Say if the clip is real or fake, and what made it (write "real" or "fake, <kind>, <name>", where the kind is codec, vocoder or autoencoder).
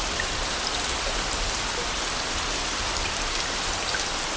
real